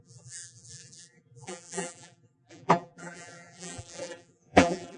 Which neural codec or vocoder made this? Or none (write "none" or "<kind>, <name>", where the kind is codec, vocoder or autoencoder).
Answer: vocoder, BigVGAN v2